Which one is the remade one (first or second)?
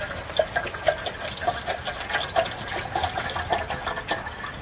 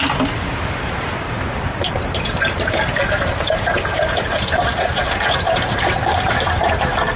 second